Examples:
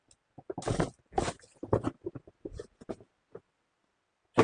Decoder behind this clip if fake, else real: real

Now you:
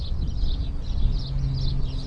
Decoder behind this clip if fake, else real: real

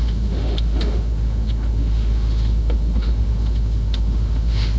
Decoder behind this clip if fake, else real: fake, autoencoder, DAC-VAE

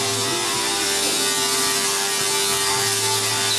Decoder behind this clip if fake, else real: real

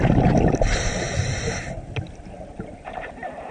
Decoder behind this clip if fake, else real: real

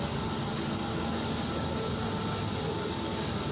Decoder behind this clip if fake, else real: real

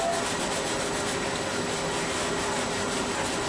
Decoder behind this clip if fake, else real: real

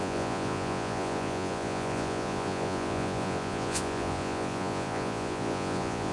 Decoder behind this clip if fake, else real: fake, vocoder, Vocos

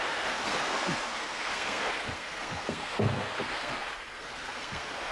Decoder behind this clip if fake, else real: fake, codec, SNAC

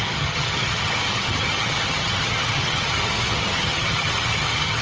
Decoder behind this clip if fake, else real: fake, vocoder, HiFi-GAN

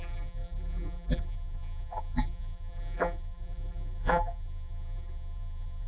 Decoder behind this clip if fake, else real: fake, vocoder, BigVGAN v2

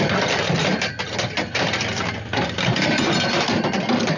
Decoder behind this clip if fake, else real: fake, vocoder, BigVGAN v2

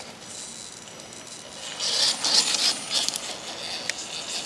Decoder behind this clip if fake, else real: real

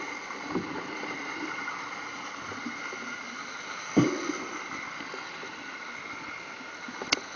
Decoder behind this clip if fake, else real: real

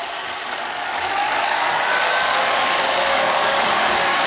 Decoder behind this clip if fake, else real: fake, codec, DAC